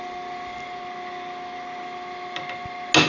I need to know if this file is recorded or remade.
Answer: recorded